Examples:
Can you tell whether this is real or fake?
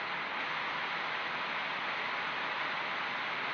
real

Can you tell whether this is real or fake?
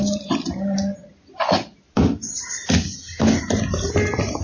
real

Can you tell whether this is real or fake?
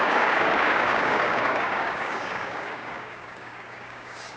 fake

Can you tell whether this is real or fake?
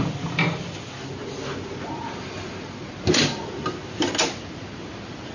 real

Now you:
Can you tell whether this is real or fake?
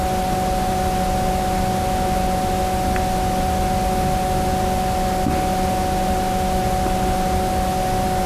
real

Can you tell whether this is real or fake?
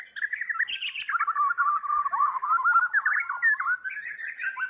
real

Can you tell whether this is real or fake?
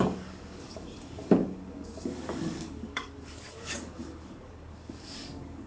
fake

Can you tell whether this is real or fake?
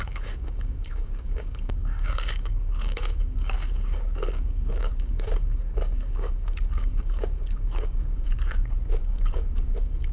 fake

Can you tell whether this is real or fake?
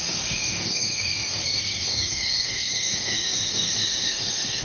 fake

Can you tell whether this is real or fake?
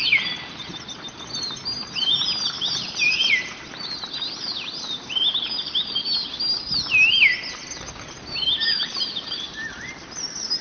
real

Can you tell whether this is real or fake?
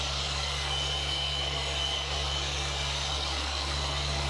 fake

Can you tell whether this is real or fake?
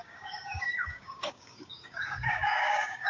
fake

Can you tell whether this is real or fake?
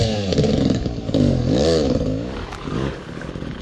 fake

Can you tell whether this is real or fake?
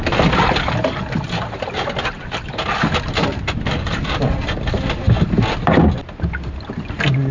real